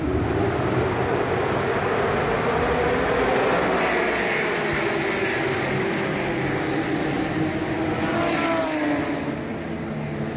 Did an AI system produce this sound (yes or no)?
no